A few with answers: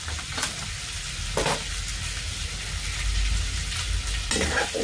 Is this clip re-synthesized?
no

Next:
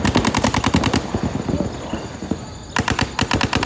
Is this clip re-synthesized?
no